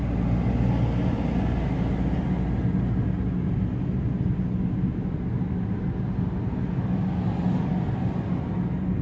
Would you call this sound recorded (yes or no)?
yes